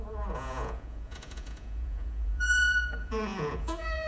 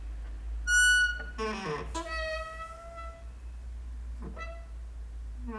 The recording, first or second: second